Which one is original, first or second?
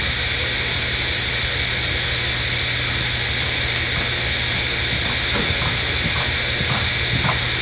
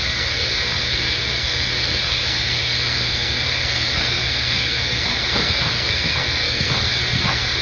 first